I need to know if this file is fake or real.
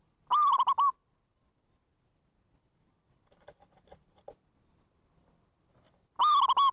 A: real